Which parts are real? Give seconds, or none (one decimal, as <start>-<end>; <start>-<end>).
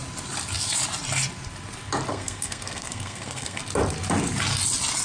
0.0-2.1; 3.6-5.0